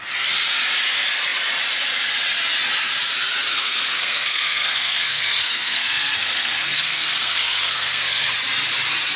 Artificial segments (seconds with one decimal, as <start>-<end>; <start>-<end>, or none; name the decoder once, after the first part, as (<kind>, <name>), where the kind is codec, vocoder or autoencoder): 3.5-8.3 (codec, SNAC)